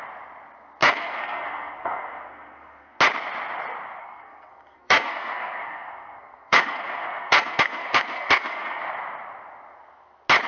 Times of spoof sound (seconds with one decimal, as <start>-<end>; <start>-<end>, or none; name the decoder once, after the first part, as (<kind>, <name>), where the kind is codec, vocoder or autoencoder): 0.8-3.0 (codec, SNAC); 4.0-8.8